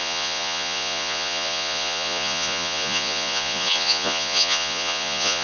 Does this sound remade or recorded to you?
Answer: remade